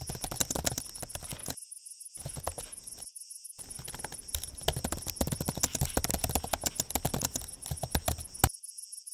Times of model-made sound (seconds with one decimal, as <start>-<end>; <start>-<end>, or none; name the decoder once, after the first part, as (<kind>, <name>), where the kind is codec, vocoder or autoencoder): 1.4-3.6 (vocoder, Vocos)